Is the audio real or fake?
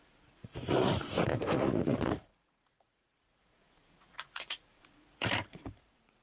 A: fake